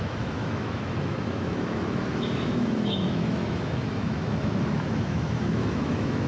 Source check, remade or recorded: remade